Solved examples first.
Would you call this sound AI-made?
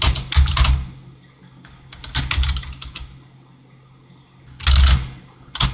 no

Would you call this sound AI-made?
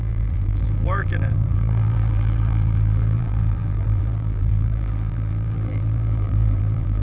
yes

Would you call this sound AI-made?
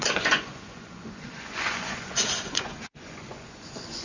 yes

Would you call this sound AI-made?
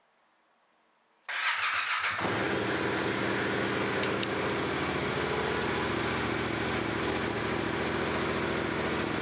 no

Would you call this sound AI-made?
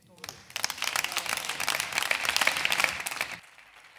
yes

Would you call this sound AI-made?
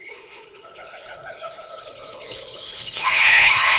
yes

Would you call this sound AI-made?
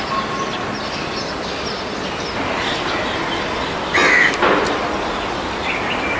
no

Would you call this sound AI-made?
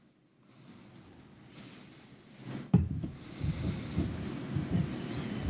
no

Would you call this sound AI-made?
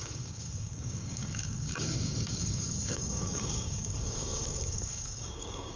yes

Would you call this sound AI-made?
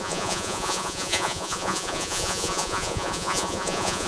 yes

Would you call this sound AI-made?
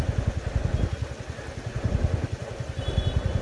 no